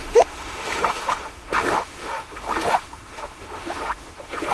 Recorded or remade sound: remade